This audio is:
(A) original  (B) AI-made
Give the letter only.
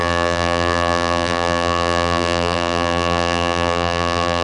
B